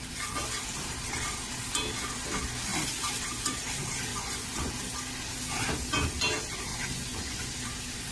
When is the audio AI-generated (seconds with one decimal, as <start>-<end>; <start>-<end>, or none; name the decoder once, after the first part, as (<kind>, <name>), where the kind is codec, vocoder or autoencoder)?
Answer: 4.1-4.7 (vocoder, Vocos); 6.7-7.5